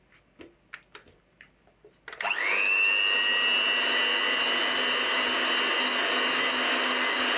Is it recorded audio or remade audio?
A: recorded